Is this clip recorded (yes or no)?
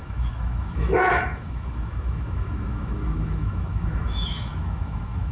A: no